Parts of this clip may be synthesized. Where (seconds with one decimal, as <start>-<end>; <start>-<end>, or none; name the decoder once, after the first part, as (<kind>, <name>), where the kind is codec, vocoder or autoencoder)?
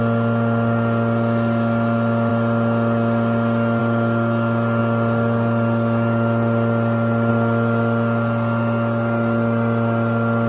none